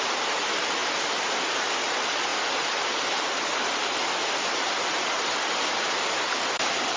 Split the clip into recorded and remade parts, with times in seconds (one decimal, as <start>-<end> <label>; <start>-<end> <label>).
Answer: 0.0-7.0 recorded